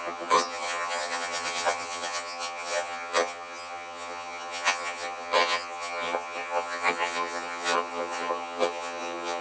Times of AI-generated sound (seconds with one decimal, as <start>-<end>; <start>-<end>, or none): 0.0-9.4